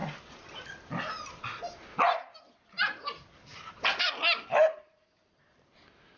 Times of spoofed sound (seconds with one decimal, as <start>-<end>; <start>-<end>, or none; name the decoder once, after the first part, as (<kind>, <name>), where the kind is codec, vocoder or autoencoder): none